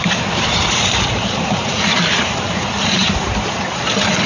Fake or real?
fake